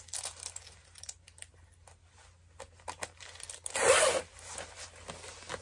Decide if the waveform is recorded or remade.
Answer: recorded